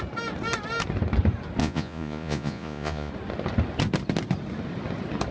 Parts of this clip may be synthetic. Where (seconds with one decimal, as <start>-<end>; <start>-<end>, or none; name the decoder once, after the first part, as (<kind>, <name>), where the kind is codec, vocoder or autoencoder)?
1.6-3.1 (vocoder, Vocos)